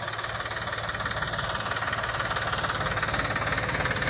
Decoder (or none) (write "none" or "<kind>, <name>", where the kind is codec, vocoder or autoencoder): none